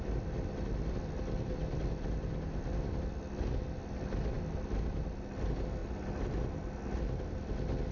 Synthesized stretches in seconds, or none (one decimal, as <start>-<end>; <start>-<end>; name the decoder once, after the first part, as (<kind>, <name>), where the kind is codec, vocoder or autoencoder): none